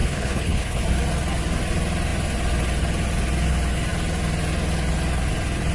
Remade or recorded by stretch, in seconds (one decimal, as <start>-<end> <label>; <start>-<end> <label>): 0.0-0.8 remade; 0.8-5.7 recorded